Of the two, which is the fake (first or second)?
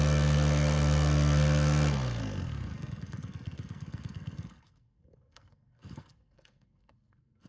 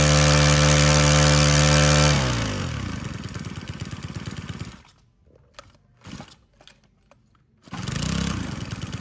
first